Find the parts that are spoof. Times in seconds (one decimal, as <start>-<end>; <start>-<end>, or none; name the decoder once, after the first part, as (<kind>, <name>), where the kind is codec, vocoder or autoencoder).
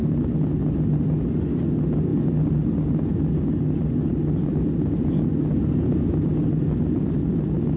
none